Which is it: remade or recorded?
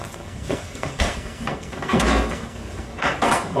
remade